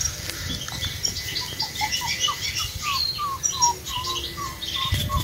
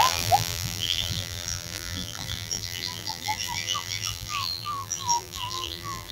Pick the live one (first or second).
first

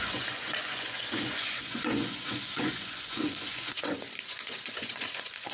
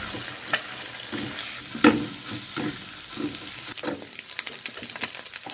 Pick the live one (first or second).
second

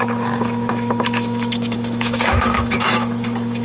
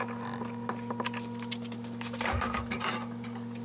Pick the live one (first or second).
second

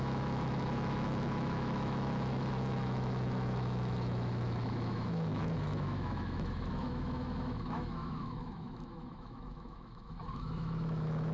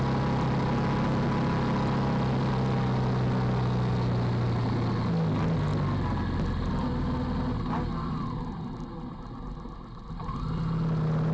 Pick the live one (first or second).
second